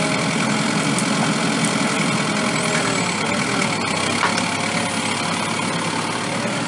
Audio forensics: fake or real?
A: real